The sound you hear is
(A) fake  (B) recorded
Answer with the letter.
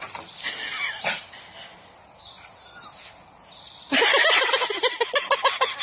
B